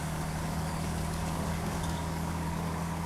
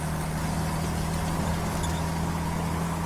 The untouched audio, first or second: second